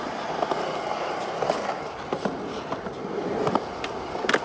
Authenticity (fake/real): real